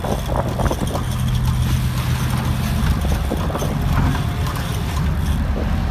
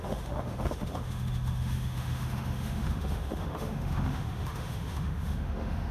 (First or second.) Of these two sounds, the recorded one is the first